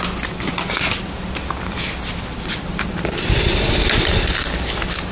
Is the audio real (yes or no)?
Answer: yes